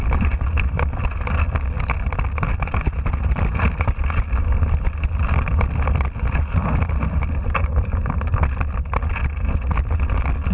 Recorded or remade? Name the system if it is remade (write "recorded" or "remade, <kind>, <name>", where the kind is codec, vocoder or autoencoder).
recorded